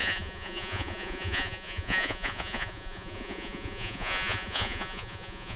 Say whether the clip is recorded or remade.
remade